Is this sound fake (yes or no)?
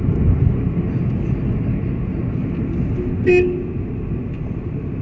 no